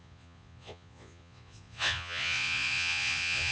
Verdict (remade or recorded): remade